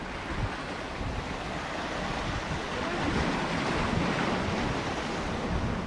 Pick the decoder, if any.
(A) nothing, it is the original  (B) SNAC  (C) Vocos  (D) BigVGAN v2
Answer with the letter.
A